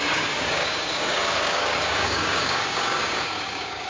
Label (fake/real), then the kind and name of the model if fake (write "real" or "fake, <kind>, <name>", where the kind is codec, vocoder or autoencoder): fake, codec, DAC